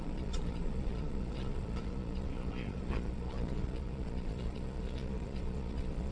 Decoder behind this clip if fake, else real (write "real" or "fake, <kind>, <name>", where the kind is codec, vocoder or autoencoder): fake, vocoder, Vocos